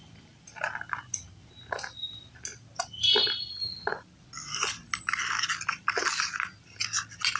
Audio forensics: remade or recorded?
recorded